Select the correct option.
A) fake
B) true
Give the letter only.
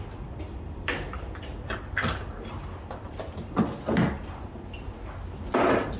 B